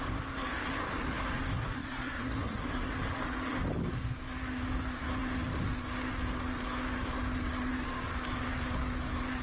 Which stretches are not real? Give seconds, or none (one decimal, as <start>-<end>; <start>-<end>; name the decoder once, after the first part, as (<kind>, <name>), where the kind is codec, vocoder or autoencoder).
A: 1.8-2.9 (codec, SNAC)